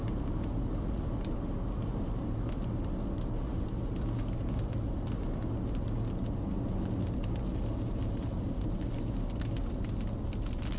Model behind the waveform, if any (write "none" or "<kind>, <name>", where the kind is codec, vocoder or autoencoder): none